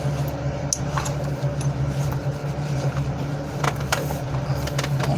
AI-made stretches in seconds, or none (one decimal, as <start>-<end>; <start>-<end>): 2.4-3.6